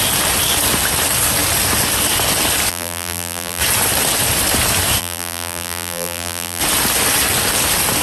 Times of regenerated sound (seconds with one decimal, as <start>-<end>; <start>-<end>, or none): 2.7-3.6; 5.0-6.6